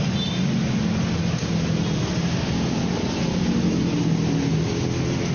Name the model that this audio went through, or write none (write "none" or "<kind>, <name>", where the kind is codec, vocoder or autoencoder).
none